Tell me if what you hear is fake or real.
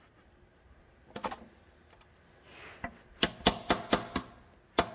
real